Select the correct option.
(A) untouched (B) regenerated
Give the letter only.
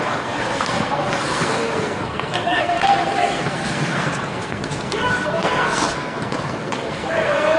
B